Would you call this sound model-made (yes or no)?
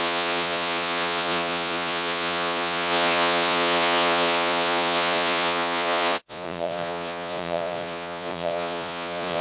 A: yes